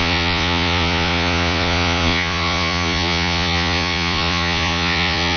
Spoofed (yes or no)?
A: yes